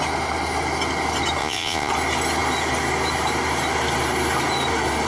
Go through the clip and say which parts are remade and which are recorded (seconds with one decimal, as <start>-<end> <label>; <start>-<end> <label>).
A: 0.0-1.4 recorded; 1.4-1.9 remade; 1.9-5.1 recorded